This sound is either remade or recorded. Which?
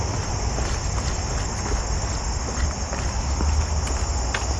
recorded